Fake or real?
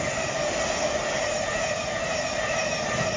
real